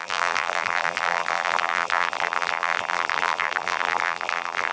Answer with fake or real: fake